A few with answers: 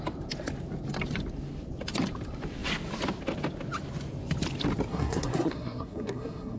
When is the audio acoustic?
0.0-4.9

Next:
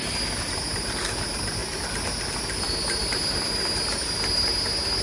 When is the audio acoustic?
none

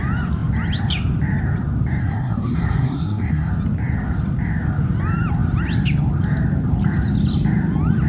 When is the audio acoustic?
0.0-2.0; 3.5-8.1

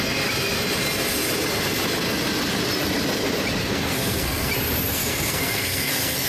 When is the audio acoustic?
0.0-3.6; 4.5-4.9